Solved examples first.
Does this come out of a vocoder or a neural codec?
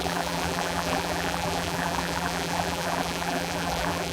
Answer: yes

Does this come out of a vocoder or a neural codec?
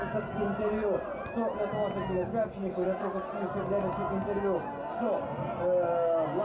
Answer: no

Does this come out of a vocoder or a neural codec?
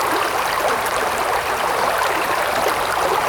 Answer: no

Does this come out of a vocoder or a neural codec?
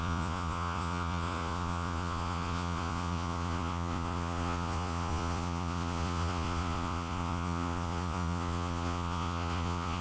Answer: yes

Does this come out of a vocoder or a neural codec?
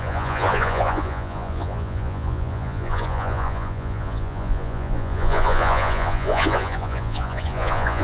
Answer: yes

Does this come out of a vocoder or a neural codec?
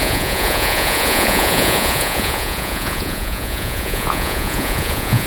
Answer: yes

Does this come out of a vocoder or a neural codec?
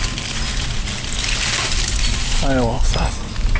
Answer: no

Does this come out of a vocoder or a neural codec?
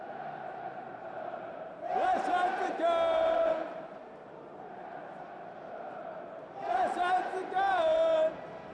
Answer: yes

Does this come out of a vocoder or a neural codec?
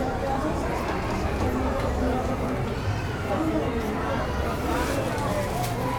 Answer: no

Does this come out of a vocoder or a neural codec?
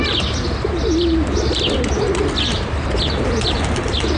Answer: no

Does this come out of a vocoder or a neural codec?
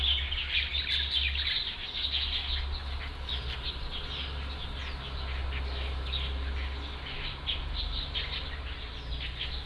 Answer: no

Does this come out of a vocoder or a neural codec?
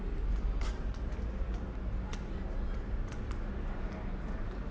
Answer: no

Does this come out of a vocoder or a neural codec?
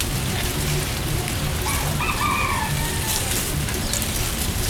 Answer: no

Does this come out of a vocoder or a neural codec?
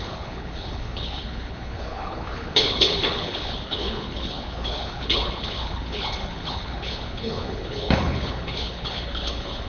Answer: yes